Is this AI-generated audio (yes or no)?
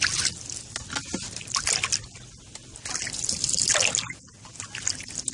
no